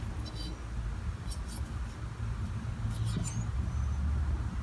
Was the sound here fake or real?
real